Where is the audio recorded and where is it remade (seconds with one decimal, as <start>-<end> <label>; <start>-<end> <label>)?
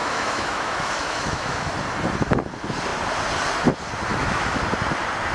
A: 0.0-1.7 remade; 1.7-4.1 recorded; 4.1-4.6 remade; 4.6-5.3 recorded